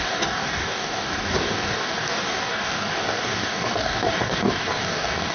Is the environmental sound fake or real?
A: fake